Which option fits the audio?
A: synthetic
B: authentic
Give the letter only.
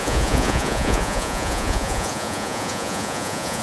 A